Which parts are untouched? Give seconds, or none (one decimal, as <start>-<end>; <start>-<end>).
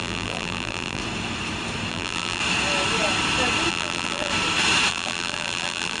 1.0-1.9; 2.4-3.7; 4.3-4.9